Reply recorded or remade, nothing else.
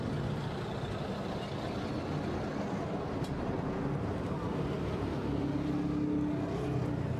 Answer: recorded